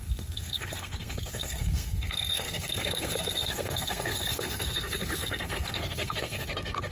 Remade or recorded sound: remade